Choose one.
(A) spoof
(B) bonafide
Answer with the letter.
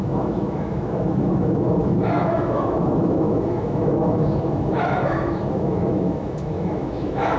A